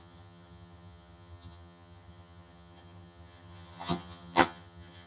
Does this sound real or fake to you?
fake